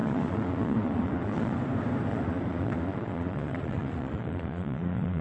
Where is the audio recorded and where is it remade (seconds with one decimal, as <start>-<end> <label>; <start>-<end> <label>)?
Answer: 0.0-1.6 remade; 1.6-2.1 recorded; 2.1-5.2 remade